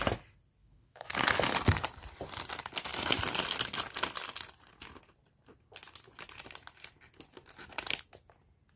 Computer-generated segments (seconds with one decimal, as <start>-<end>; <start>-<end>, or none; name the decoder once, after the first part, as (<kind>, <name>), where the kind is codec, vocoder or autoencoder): 0.6-1.3 (autoencoder, DAC-VAE)